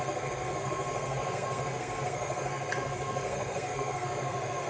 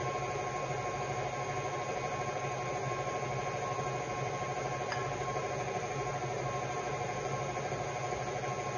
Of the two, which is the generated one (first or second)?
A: first